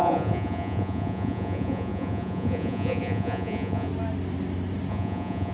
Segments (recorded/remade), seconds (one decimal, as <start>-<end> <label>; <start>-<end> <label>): 0.0-3.9 remade; 3.9-4.9 recorded; 4.9-5.5 remade